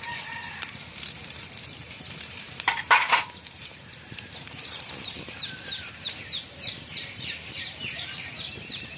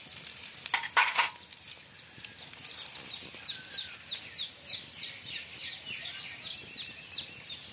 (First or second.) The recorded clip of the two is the second